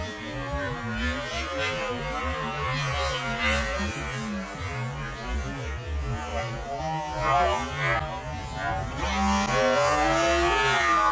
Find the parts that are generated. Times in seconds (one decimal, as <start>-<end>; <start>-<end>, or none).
6.3-6.8